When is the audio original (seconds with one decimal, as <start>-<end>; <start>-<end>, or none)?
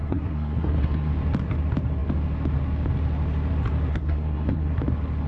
1.1-3.9; 4.7-5.3